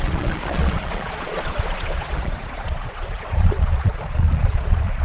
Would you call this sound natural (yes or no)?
no